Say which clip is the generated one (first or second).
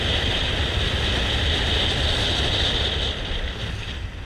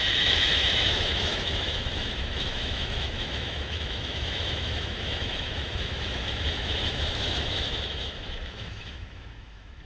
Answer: second